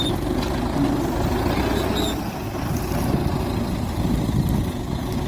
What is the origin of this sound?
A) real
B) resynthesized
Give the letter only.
A